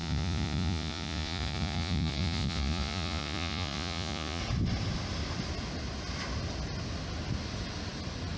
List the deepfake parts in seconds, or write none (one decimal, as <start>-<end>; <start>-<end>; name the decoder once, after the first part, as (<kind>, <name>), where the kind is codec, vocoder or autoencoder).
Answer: 0.0-4.4 (vocoder, Vocos)

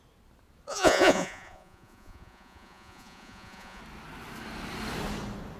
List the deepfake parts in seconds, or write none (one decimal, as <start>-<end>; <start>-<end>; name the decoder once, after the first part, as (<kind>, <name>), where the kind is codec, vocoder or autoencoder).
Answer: 0.7-3.8 (vocoder, Vocos)

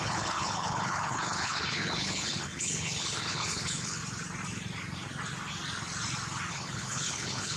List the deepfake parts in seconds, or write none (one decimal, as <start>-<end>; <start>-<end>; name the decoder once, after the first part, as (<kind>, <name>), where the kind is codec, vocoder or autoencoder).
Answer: 0.0-4.0 (codec, HILCodec); 6.5-7.6

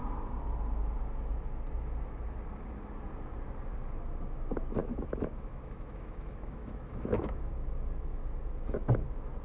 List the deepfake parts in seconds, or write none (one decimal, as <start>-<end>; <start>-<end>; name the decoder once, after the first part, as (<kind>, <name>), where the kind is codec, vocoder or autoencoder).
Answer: 4.8-7.5 (autoencoder, DAC-VAE)